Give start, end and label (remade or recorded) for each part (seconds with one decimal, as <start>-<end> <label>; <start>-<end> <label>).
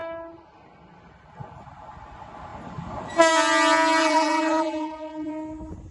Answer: 0.0-4.0 recorded; 4.0-5.3 remade; 5.3-5.9 recorded